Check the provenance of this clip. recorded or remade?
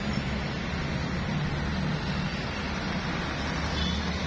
recorded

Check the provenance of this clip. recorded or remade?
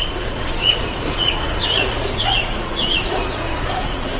remade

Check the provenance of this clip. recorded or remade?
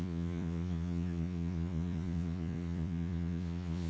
remade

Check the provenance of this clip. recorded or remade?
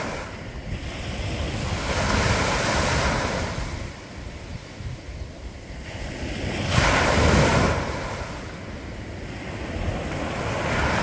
recorded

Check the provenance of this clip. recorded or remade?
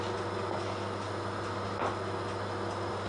recorded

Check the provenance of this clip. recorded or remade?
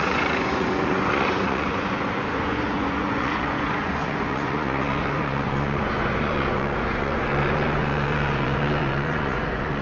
remade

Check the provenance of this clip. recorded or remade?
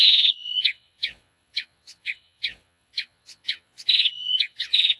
remade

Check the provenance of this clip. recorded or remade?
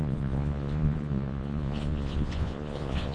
remade